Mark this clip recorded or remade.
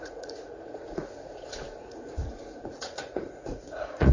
remade